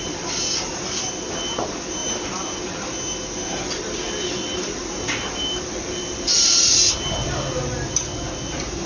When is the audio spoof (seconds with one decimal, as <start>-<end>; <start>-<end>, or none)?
none